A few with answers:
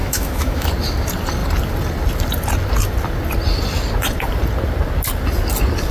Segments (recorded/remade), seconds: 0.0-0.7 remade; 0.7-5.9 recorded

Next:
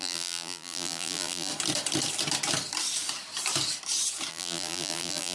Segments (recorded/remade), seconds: 0.0-1.5 remade; 1.5-4.3 recorded; 4.3-5.3 remade

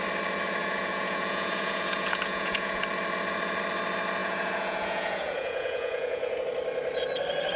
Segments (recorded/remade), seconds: 0.0-0.6 recorded; 0.6-2.8 remade; 2.8-4.2 recorded; 4.2-6.4 remade; 6.4-7.6 recorded

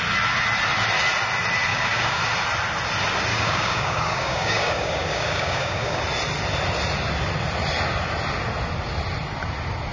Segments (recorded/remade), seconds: 0.0-1.7 recorded; 1.7-2.2 remade; 2.2-3.3 recorded; 3.3-6.0 remade; 6.0-9.9 recorded

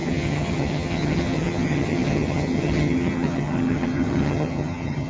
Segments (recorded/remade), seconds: 0.0-5.1 remade

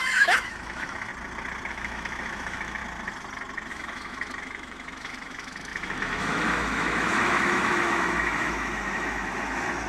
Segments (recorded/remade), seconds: 0.0-1.1 remade; 1.1-1.7 recorded; 1.7-2.8 remade; 2.8-3.7 recorded; 3.7-9.9 remade

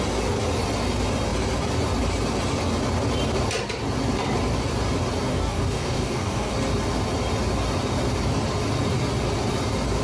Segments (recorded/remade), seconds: 0.0-5.3 recorded; 5.3-6.5 remade; 6.5-10.0 recorded